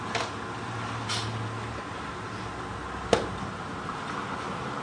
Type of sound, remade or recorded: recorded